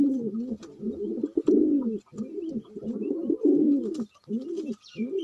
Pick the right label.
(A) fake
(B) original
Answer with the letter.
B